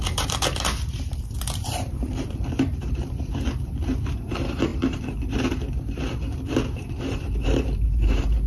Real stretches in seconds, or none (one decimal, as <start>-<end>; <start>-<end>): none